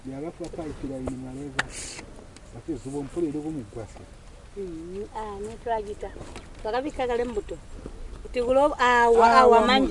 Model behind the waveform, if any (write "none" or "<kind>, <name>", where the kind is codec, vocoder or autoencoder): none